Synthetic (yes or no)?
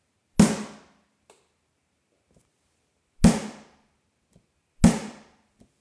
no